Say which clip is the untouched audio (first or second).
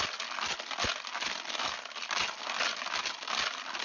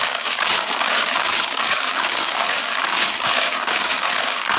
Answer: first